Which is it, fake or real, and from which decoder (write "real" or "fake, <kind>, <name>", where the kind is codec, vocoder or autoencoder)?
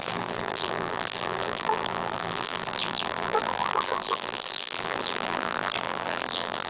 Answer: fake, vocoder, BigVGAN v2